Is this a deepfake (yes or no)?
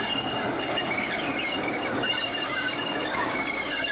yes